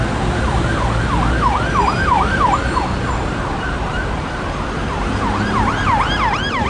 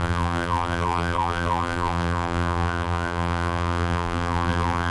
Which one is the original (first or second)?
first